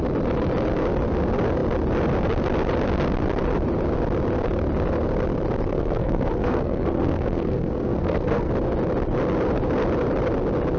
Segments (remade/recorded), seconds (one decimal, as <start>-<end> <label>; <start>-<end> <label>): 0.0-5.7 recorded; 5.7-8.5 remade; 8.5-10.8 recorded